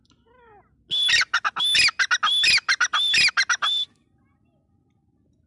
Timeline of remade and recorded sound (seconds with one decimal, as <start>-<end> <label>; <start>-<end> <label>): 0.0-5.5 recorded